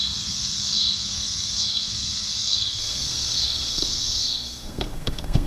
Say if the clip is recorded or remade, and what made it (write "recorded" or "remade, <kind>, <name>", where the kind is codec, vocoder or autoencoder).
remade, codec, SNAC